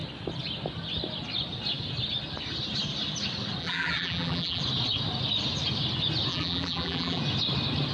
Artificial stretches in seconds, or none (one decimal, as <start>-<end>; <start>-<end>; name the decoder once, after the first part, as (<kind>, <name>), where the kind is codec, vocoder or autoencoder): 3.6-4.6 (vocoder, BigVGAN v2); 6.3-7.2